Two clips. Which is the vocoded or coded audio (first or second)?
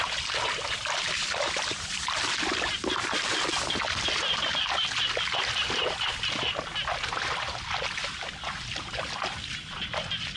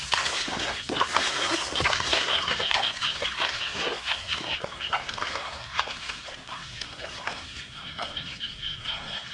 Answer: second